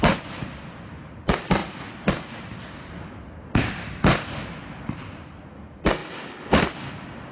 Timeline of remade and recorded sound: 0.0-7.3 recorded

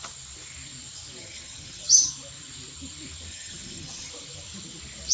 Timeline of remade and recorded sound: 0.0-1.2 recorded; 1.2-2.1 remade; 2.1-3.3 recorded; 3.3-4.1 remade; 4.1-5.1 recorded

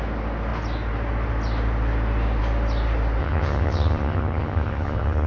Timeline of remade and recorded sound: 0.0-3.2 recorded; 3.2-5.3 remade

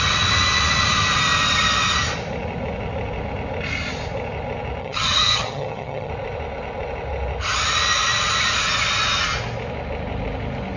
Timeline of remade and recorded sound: 0.0-4.8 recorded; 4.8-6.1 remade; 6.1-10.8 recorded